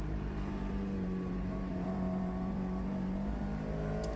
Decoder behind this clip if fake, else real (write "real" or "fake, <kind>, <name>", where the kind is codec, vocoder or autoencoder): fake, vocoder, BigVGAN v2